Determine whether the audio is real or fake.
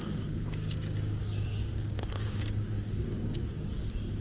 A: fake